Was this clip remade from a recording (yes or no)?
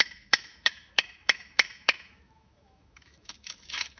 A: yes